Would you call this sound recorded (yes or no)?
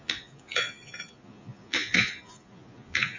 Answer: no